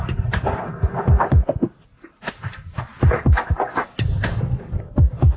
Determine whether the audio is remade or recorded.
recorded